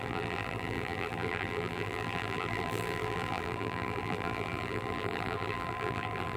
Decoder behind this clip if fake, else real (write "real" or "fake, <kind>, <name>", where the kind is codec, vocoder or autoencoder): fake, vocoder, BigVGAN v2